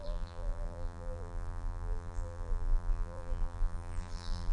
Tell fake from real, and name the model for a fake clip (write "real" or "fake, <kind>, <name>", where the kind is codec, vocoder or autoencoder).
fake, vocoder, BigVGAN v2